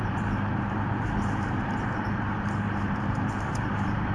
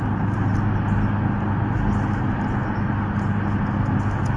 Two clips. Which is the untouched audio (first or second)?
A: second